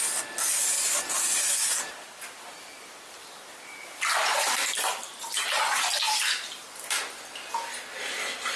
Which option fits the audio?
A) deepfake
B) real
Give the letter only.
B